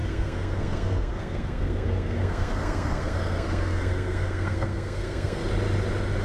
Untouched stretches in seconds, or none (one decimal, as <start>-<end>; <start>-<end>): 5.4-6.2